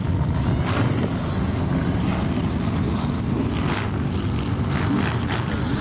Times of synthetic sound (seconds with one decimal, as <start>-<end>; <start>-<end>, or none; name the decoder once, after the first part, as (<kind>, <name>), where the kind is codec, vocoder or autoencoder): none